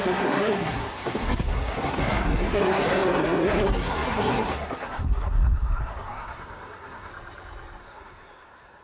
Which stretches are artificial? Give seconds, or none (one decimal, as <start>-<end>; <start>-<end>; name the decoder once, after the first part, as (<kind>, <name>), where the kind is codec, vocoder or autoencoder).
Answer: 0.0-7.1 (codec, SNAC); 7.8-8.8